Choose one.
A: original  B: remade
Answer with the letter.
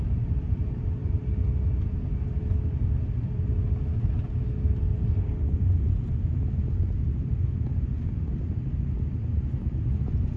A